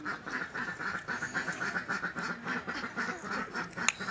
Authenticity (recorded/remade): recorded